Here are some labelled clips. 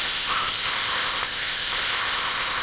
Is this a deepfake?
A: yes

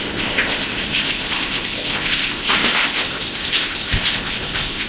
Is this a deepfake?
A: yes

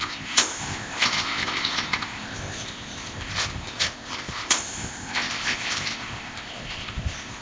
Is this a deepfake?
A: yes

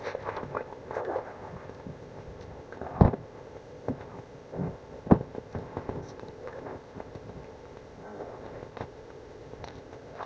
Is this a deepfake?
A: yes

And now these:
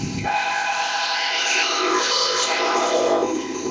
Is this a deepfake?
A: yes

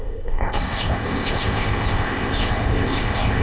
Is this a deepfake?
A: yes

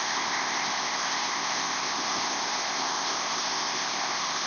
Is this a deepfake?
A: yes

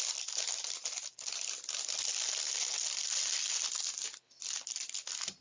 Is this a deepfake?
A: no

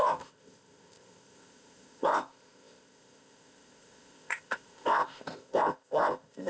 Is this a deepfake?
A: yes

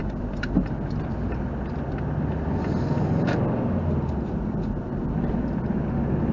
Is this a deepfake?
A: no